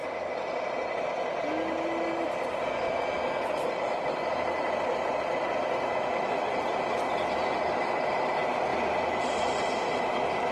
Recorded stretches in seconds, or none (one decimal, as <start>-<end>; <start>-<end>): 1.2-8.7; 9.6-10.5